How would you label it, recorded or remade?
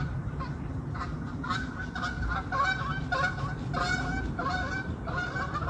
remade